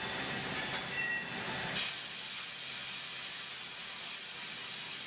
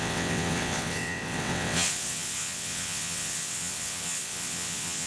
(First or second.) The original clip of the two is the first